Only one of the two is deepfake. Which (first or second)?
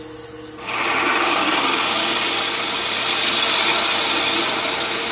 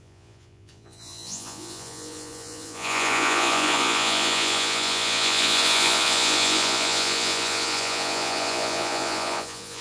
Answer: second